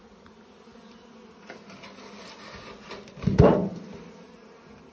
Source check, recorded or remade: recorded